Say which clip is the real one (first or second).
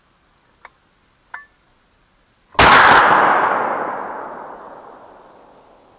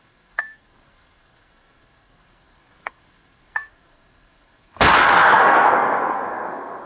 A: first